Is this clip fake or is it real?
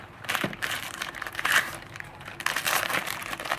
fake